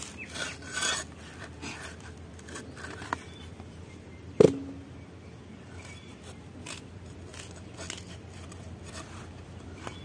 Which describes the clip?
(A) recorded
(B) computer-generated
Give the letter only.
A